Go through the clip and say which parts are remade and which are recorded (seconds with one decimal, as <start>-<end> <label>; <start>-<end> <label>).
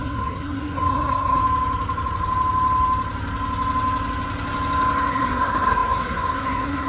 0.0-1.4 remade; 1.4-5.1 recorded; 5.1-6.9 remade